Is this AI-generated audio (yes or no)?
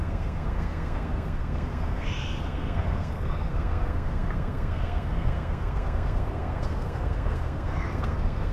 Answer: yes